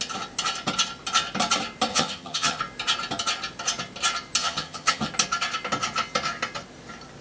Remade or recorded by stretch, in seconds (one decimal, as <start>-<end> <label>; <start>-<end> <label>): 0.0-1.9 recorded; 1.9-2.6 remade; 2.6-4.4 recorded; 4.4-5.1 remade; 5.1-7.2 recorded